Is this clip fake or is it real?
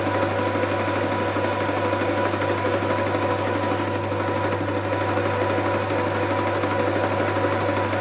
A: real